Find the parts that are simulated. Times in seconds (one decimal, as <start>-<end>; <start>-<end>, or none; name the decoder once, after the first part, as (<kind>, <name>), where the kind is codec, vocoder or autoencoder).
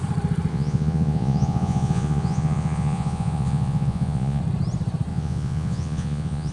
0.5-4.4 (vocoder, Vocos); 5.1-6.5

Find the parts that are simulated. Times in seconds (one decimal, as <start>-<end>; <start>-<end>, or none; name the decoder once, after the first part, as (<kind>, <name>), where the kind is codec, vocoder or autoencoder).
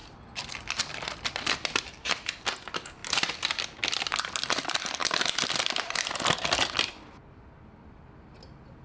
none